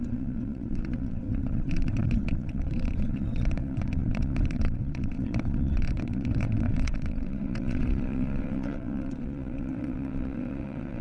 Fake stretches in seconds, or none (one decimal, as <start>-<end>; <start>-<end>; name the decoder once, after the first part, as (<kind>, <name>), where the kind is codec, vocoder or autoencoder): 0.0-11.0 (vocoder, WaveNeXt)